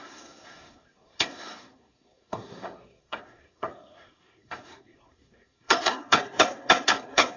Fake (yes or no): yes